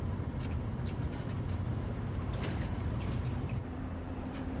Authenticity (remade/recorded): remade